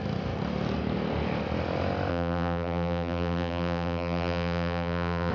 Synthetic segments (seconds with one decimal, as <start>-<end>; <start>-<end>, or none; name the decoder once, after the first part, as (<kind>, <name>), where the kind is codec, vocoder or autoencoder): 2.1-5.3 (vocoder, BigVGAN v2)